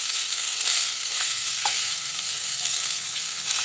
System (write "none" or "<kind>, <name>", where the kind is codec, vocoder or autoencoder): codec, SNAC